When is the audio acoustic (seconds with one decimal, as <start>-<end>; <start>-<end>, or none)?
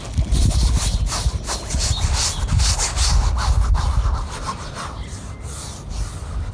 0.0-6.5